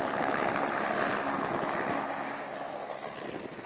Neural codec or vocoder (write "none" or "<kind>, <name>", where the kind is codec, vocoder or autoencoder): none